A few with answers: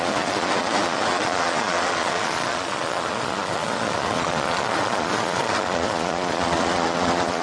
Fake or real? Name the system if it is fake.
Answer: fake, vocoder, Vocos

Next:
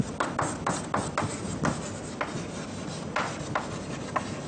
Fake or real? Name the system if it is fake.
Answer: real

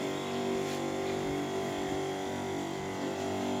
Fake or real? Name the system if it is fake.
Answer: real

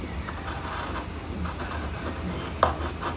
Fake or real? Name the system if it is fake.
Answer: real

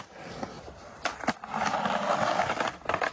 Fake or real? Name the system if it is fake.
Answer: real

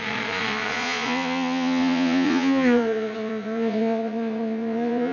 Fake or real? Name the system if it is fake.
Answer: fake, vocoder, Vocos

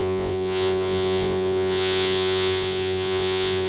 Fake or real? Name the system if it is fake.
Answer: fake, vocoder, Vocos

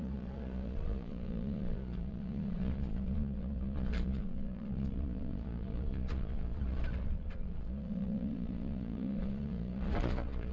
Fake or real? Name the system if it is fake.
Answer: fake, vocoder, Vocos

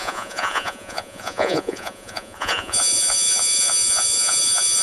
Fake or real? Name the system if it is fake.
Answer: fake, vocoder, Vocos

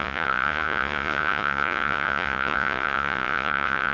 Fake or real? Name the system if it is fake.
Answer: fake, vocoder, Vocos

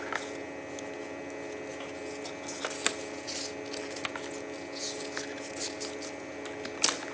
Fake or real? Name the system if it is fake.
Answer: real